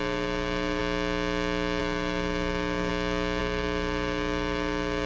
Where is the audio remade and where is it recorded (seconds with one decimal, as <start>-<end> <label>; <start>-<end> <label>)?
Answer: 0.0-0.8 remade; 0.8-1.8 recorded; 1.8-2.9 remade; 2.9-3.4 recorded; 3.4-5.1 remade